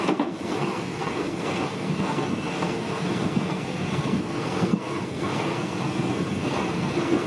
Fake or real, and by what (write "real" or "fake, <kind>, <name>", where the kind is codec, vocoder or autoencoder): fake, codec, SNAC